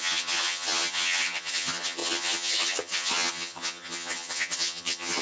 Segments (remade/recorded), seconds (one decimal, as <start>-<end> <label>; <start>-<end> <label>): 0.0-5.2 remade

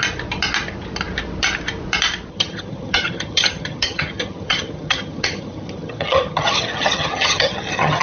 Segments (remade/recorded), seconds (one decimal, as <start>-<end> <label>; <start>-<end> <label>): 0.0-2.3 recorded; 2.3-8.0 remade

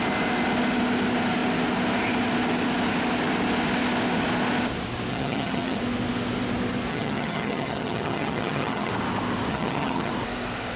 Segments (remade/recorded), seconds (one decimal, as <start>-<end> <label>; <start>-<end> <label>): 0.0-5.1 recorded; 5.1-5.8 remade; 5.8-6.9 recorded; 6.9-8.9 remade; 8.9-9.5 recorded; 9.5-10.1 remade; 10.1-10.8 recorded

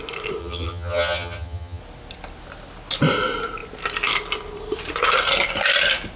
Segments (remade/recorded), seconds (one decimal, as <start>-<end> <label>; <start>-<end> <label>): 0.0-0.4 recorded; 0.4-1.8 remade; 1.8-6.2 recorded

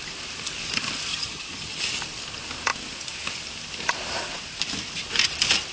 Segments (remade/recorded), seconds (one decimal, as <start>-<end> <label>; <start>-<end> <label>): 0.0-1.1 recorded; 1.1-1.8 remade; 1.8-5.7 recorded

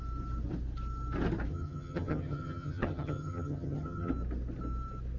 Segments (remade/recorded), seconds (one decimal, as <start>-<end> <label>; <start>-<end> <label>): 0.0-1.5 recorded; 1.5-4.1 remade; 4.1-5.2 recorded

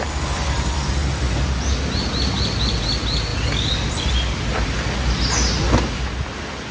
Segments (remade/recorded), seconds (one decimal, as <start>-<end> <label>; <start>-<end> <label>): 0.0-6.7 recorded